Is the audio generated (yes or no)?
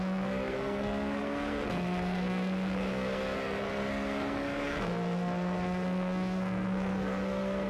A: yes